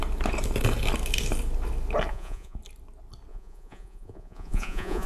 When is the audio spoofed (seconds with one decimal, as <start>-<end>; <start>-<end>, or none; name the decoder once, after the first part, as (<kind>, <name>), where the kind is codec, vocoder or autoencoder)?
2.1-2.6 (vocoder, Vocos); 3.3-5.1